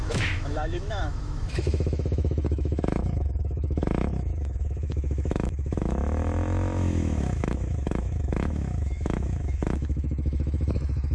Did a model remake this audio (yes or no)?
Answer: yes